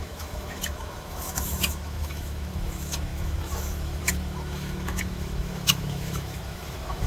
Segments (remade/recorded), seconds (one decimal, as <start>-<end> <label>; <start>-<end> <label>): 0.0-7.1 remade